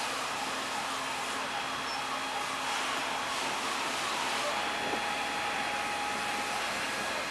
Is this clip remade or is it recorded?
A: recorded